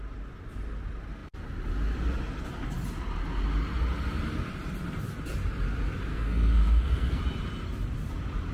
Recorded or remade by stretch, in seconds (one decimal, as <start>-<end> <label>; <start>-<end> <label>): 0.0-6.1 recorded; 6.1-7.2 remade; 7.2-8.5 recorded